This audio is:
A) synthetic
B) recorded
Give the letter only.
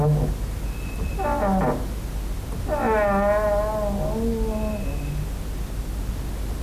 B